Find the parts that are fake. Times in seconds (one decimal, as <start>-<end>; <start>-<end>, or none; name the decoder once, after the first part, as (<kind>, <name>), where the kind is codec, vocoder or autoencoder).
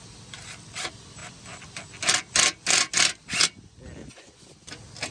4.0-4.5 (vocoder, Vocos)